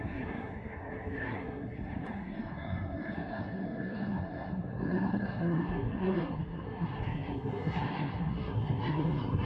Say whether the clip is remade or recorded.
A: remade